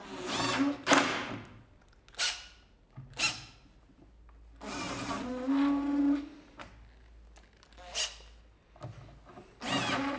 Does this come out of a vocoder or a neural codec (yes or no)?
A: no